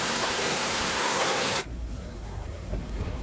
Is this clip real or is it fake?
fake